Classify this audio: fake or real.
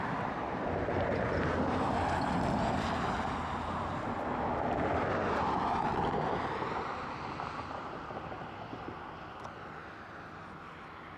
real